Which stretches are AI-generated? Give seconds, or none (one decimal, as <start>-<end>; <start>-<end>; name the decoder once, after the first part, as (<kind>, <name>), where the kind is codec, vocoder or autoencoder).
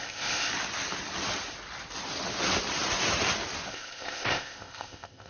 0.0-0.5 (codec, ZipCodec); 3.7-5.3